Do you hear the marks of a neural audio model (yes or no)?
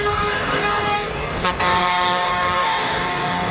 yes